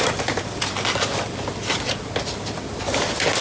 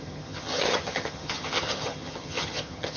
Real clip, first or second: first